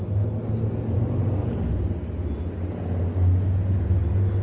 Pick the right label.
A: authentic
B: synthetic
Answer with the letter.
A